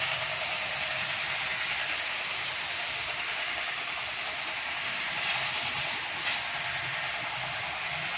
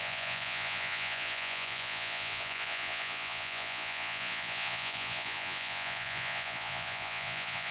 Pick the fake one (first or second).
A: second